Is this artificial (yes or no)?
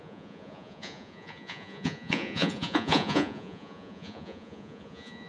yes